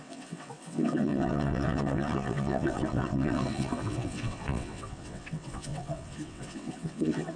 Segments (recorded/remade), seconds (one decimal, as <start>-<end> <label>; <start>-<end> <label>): 0.0-7.4 remade